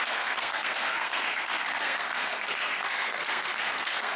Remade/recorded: remade